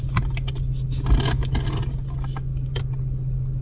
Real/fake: real